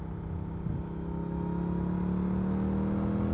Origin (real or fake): real